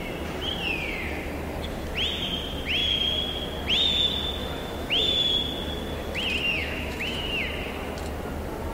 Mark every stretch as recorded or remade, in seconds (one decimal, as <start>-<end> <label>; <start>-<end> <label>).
0.0-4.4 recorded; 4.4-5.0 remade; 5.0-6.6 recorded; 6.6-7.4 remade; 7.4-8.7 recorded